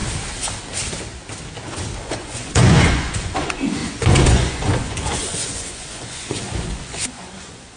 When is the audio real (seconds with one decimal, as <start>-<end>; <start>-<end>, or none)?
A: 0.0-2.0